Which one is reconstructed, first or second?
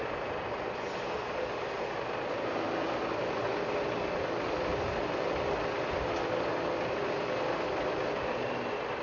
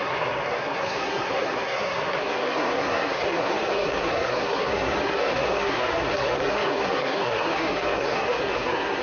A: second